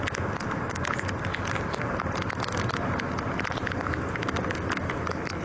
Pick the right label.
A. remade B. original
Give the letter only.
B